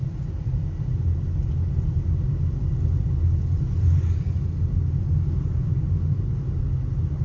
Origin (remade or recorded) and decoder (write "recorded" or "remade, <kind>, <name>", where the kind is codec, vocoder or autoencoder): recorded